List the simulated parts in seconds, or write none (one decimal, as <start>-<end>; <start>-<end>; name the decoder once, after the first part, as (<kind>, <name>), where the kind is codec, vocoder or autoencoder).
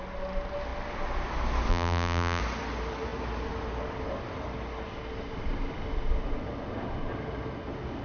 1.7-2.4 (vocoder, BigVGAN v2)